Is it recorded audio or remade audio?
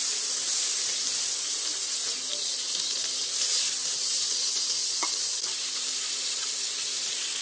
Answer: recorded